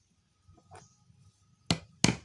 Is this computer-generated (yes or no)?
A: no